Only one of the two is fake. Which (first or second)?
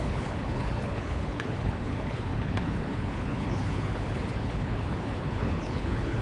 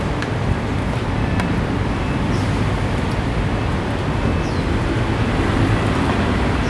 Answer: first